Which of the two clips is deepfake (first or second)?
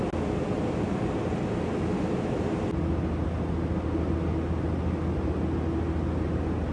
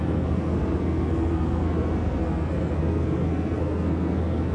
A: second